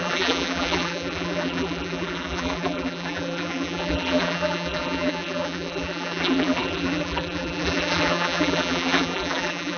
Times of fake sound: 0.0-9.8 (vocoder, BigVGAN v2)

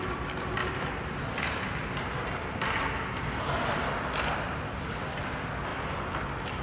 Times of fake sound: 0.6-3.1 (vocoder, BigVGAN v2)

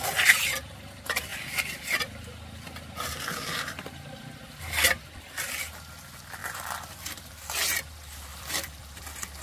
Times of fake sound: 1.3-5.6 (vocoder, BigVGAN v2); 8.3-9.0